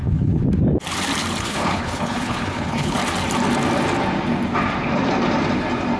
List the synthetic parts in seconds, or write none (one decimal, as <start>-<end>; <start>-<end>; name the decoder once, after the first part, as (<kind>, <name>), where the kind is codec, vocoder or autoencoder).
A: 0.0-0.4 (codec, HILCodec); 1.4-3.0